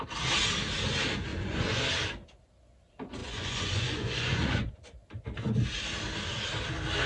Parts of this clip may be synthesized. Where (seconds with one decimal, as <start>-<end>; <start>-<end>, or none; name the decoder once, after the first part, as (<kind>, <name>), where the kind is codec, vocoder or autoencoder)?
1.3-1.8 (vocoder, Vocos); 3.2-4.7